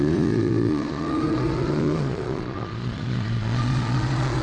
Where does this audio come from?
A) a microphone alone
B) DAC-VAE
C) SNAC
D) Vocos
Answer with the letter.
D